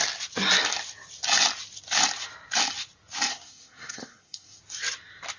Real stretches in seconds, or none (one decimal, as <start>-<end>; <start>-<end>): 0.0-3.3; 4.6-5.4